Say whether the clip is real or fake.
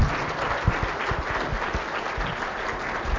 real